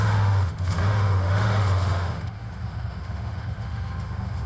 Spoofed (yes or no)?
yes